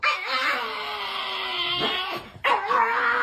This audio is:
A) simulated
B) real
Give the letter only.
B